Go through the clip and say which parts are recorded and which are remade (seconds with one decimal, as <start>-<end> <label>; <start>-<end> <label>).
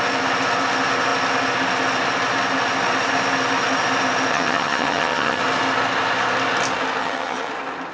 0.0-4.3 recorded; 4.3-5.4 remade; 5.4-7.0 recorded; 7.0-7.5 remade; 7.5-7.9 recorded